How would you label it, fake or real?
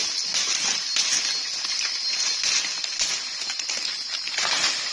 real